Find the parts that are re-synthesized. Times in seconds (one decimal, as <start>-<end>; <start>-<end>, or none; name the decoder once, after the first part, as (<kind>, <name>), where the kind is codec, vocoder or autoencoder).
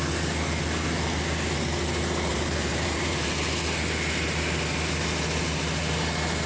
2.3-3.4 (vocoder, BigVGAN v2)